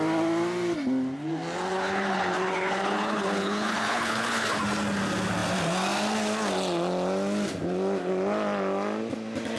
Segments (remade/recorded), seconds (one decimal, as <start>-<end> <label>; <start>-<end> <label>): 0.0-1.7 recorded; 1.7-4.6 remade; 4.6-9.6 recorded